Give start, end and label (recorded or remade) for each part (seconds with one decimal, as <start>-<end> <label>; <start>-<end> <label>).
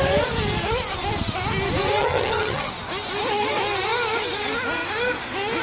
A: 0.0-2.0 recorded; 2.0-2.7 remade; 2.7-5.6 recorded